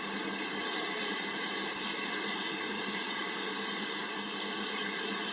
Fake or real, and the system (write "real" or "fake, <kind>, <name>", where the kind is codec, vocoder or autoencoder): fake, vocoder, BigVGAN v2